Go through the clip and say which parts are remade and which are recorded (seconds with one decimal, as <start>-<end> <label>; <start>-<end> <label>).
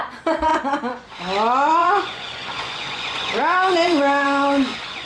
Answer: 0.0-0.5 recorded; 0.5-1.2 remade; 1.2-1.8 recorded; 1.8-5.1 remade